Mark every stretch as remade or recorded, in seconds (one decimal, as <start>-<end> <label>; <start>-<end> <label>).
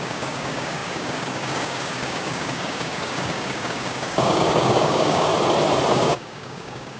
0.0-5.3 remade; 5.3-5.9 recorded; 5.9-7.0 remade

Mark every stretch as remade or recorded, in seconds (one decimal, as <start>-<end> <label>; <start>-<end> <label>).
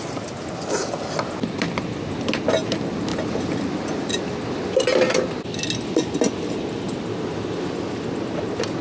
0.0-8.8 recorded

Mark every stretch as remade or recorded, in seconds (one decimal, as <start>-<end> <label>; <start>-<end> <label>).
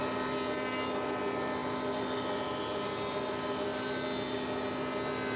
0.0-5.4 recorded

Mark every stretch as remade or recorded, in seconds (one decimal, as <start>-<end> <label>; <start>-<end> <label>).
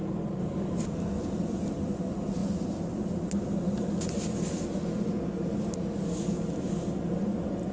0.0-0.8 remade; 0.8-7.7 recorded